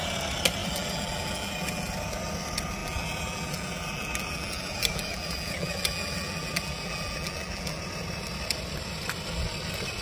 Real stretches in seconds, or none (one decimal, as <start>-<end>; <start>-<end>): 0.0-0.6; 1.9-2.8; 7.8-10.0